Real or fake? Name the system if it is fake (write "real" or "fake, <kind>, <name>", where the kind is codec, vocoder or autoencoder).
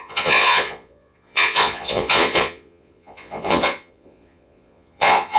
fake, vocoder, Vocos